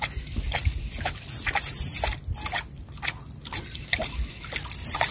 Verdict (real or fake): real